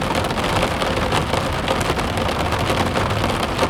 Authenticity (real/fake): real